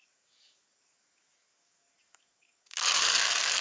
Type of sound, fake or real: fake